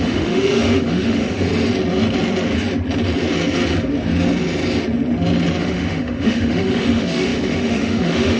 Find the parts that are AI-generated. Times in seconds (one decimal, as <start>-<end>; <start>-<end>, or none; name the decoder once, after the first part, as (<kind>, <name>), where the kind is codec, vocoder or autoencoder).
0.0-1.5 (autoencoder, DAC-VAE); 5.6-8.4